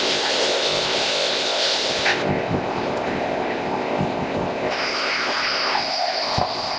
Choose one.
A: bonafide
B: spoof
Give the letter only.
B